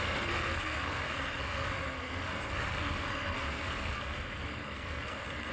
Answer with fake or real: fake